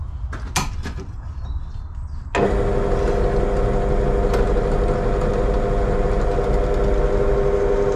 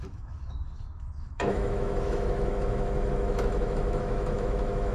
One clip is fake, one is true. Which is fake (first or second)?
second